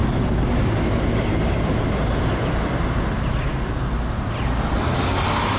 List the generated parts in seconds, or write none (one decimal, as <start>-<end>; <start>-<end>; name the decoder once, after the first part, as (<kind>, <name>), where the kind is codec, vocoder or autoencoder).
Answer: none

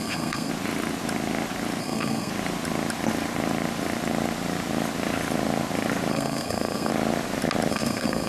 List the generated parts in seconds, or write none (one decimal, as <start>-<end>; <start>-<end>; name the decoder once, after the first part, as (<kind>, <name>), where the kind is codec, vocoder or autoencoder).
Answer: 0.0-0.5 (codec, SNAC); 1.8-2.3; 6.1-6.9; 7.7-8.3

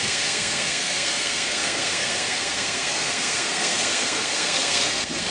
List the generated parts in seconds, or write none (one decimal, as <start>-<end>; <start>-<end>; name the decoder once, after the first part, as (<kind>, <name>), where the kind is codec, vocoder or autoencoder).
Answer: 0.0-5.3 (codec, SNAC)

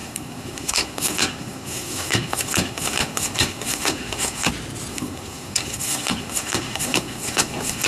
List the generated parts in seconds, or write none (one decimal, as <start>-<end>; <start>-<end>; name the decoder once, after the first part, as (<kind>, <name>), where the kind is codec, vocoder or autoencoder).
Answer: 0.0-4.5 (codec, SNAC); 4.9-7.9

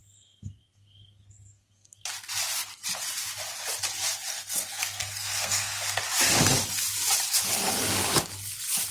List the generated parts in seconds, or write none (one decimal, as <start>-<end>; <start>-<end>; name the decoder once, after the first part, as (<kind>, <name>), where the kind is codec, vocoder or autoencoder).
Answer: 0.0-2.1 (codec, SNAC); 4.3-6.0

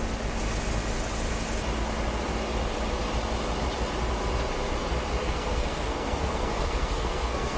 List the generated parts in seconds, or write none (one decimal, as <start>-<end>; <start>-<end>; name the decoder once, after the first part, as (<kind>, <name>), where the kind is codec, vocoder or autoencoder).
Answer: 5.2-7.6 (codec, SNAC)